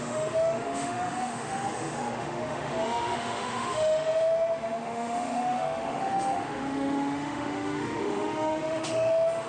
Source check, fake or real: fake